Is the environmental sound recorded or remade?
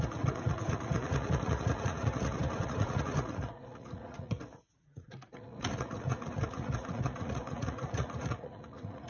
remade